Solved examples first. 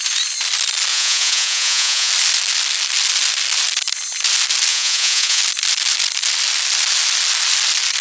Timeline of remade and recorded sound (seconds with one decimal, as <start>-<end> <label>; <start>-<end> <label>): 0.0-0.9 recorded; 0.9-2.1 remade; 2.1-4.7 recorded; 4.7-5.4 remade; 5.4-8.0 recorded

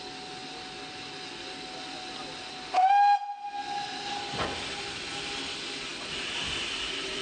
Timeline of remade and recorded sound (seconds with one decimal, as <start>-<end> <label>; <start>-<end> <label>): 0.0-7.2 recorded

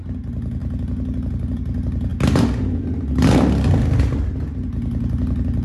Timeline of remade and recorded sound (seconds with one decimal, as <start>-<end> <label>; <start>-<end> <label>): 0.0-5.6 recorded

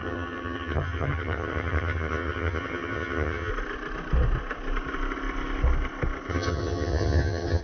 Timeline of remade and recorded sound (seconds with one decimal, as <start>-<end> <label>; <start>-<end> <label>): 0.0-3.5 remade; 3.5-6.3 recorded; 6.3-7.6 remade

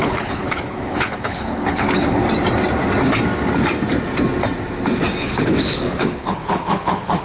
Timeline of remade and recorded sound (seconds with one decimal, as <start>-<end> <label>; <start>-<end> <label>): 0.0-2.2 remade; 2.2-5.2 recorded; 5.2-7.2 remade

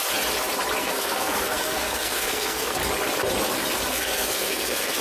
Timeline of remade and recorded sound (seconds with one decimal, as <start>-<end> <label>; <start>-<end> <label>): 0.0-0.8 recorded; 0.8-2.8 remade; 2.8-3.9 recorded; 3.9-5.0 remade

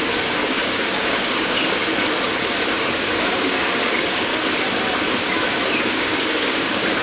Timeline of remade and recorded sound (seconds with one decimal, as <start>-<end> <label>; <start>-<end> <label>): 0.0-1.8 remade; 1.8-2.9 recorded; 2.9-4.3 remade; 4.3-5.8 recorded; 5.8-7.0 remade